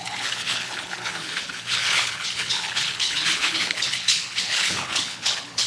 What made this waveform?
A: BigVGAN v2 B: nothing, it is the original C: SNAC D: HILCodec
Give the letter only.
D